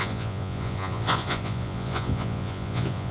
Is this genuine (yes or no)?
no